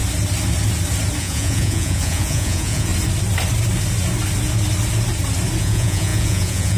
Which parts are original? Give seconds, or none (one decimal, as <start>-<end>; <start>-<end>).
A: 0.0-1.2; 2.9-5.6